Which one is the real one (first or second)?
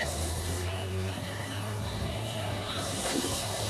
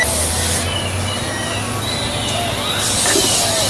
second